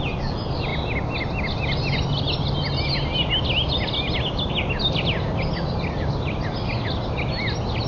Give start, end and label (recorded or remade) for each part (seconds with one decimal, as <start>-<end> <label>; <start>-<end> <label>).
0.0-7.9 recorded